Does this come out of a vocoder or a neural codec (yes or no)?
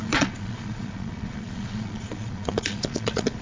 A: yes